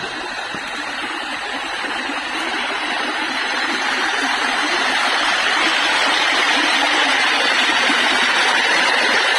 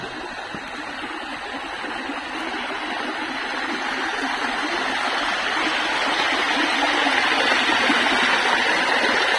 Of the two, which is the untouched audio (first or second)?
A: second